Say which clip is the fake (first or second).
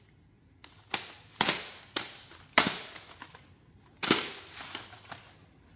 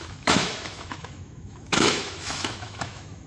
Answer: second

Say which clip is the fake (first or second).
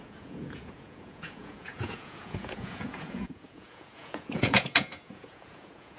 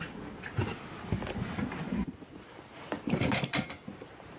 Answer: first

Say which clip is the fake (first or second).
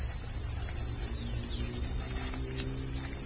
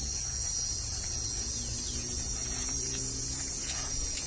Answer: second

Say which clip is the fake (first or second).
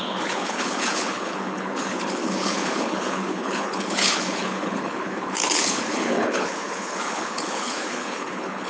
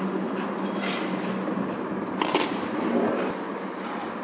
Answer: first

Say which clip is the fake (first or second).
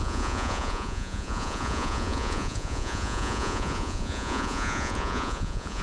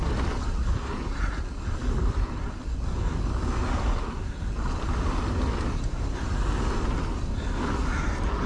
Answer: first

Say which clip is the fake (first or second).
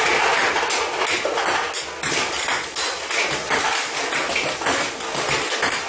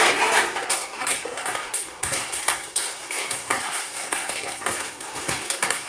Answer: second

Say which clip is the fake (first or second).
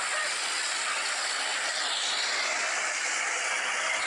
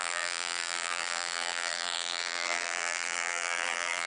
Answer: second